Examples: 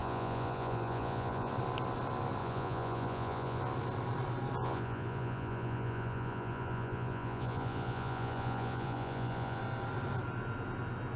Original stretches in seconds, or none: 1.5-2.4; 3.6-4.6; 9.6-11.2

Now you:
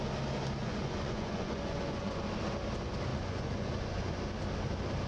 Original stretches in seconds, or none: 0.0-0.6; 2.2-3.1; 4.2-5.1

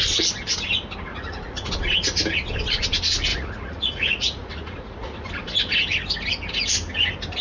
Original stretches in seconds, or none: 0.0-1.1; 1.7-3.3; 5.3-7.4

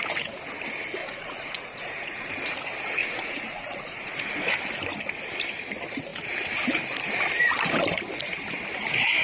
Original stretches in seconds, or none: 0.0-1.0; 2.3-3.0; 4.5-9.2

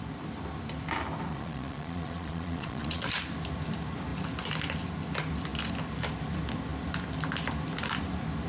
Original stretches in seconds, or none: 0.0-1.3; 3.0-8.5

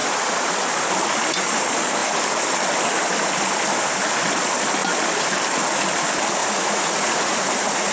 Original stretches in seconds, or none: 0.6-6.4